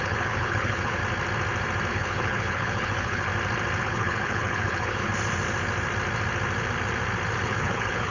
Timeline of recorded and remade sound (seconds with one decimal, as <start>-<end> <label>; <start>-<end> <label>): 0.0-1.0 remade; 1.0-1.9 recorded; 1.9-3.3 remade; 3.3-3.8 recorded; 3.8-5.1 remade; 5.1-7.4 recorded; 7.4-8.1 remade